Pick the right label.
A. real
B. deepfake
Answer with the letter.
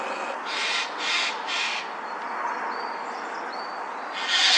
A